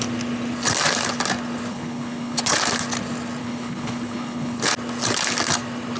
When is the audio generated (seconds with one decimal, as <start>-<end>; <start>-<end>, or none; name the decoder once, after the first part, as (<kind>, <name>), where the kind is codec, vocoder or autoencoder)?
1.7-2.4 (codec, HILCodec); 3.4-4.6